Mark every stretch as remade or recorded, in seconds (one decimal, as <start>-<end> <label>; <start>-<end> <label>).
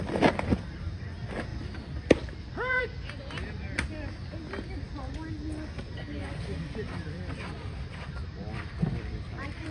0.0-1.5 recorded; 1.5-2.8 remade; 2.8-6.2 recorded; 6.2-9.7 remade